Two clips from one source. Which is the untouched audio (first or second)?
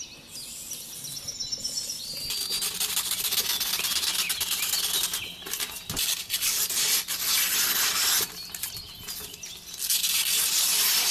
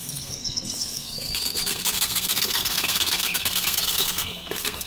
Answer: first